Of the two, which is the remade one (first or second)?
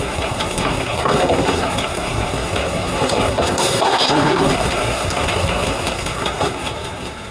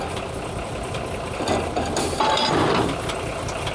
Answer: first